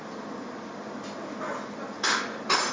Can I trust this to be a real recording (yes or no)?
yes